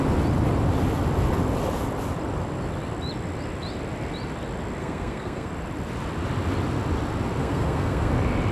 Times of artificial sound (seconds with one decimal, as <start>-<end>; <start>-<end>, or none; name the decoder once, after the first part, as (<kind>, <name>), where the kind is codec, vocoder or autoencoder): 4.8-5.5 (codec, SNAC); 7.4-8.1